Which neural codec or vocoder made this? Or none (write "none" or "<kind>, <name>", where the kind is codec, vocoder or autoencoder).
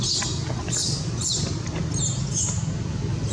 none